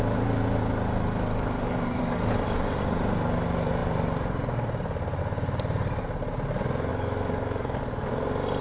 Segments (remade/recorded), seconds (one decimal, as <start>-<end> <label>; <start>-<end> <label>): 0.0-1.3 recorded; 1.3-2.0 remade; 2.0-6.9 recorded; 6.9-7.8 remade; 7.8-8.6 recorded